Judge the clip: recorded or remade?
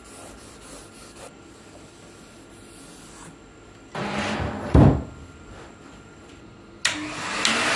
recorded